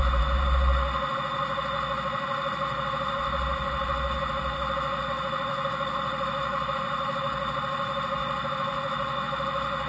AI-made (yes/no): no